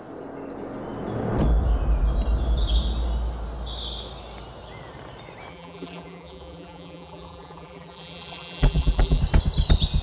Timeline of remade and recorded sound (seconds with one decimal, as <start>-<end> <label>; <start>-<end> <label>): 0.0-5.5 recorded; 5.5-9.2 remade; 9.2-10.0 recorded